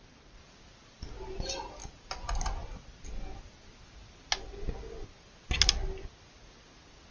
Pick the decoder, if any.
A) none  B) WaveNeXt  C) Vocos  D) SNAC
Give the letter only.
A